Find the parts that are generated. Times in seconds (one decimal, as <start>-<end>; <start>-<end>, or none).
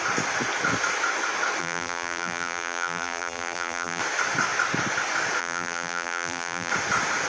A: 1.6-4.0; 5.4-6.7